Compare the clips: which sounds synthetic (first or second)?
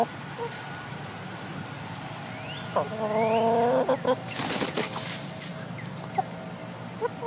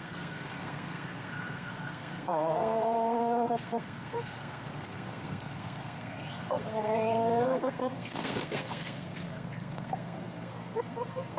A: second